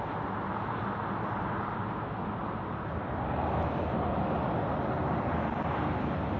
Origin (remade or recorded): recorded